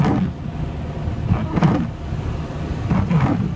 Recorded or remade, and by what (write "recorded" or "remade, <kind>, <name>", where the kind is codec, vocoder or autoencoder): recorded